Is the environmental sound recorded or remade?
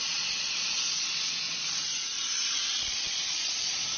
remade